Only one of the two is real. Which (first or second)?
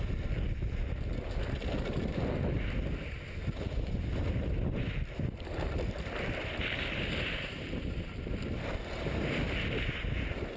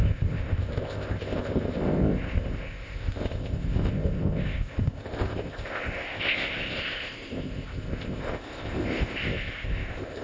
first